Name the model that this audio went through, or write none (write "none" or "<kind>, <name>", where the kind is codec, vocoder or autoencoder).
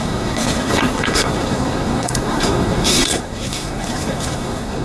codec, SNAC